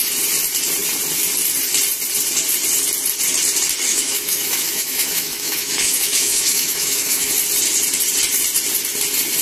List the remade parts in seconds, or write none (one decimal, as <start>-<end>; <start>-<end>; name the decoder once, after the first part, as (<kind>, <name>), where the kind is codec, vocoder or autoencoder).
3.9-7.3 (autoencoder, DAC-VAE)